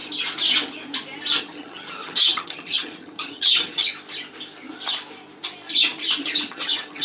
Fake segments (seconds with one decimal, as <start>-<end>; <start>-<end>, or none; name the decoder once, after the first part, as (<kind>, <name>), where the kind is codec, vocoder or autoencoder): 1.4-3.9 (vocoder, HiFi-GAN); 6.2-7.0